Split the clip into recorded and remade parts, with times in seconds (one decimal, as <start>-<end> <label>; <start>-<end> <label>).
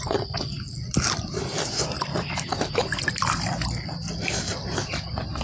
0.0-5.4 remade